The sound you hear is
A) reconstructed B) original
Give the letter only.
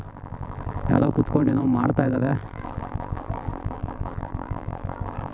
A